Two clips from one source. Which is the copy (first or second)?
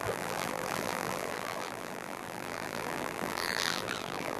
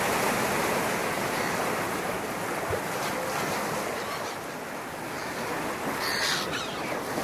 first